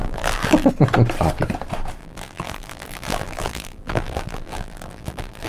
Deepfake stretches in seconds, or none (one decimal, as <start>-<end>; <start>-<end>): 0.0-0.7; 2.0-5.5